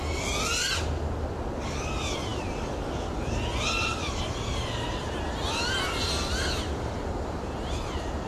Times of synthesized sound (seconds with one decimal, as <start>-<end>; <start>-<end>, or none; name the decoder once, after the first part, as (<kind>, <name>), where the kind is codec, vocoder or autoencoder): none